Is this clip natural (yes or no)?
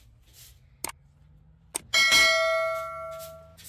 yes